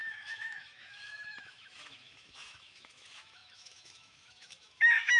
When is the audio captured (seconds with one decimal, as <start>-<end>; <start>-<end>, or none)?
none